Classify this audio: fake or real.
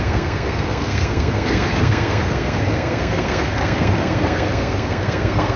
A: fake